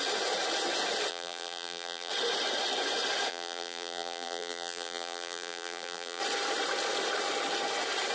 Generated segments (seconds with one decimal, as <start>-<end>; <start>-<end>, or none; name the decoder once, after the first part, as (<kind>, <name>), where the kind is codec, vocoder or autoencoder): 1.1-2.1 (vocoder, BigVGAN v2); 3.3-6.2